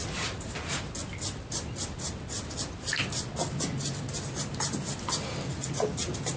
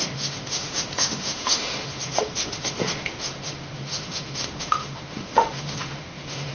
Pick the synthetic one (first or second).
second